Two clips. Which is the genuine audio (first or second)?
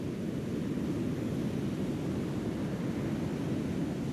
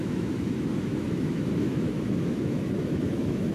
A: first